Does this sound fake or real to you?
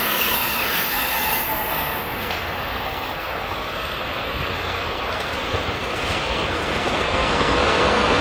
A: fake